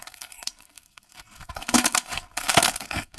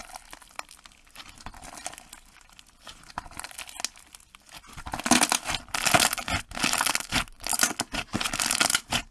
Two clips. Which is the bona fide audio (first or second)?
second